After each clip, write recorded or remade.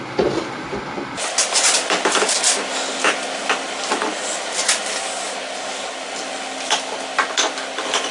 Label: recorded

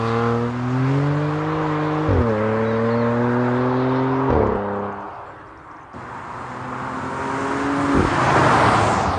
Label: recorded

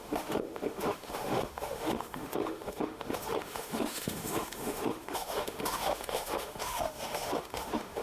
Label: remade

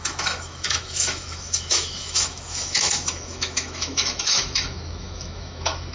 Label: remade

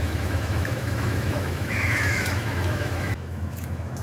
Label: remade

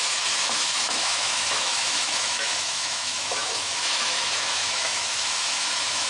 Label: remade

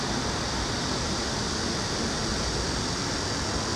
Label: recorded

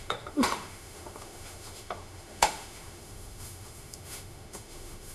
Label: remade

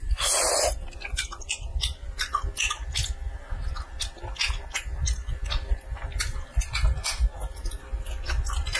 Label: recorded